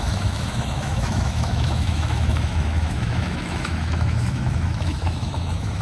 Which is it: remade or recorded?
remade